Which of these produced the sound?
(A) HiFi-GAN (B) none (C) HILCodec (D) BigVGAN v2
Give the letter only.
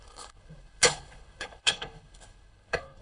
C